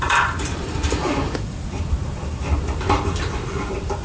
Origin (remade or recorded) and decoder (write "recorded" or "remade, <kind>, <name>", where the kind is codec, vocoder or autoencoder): remade, vocoder, BigVGAN v2